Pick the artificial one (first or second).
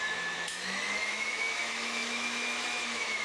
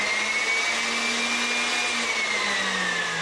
first